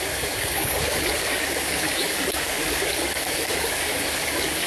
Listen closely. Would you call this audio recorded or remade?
remade